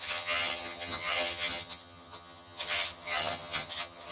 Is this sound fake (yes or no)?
yes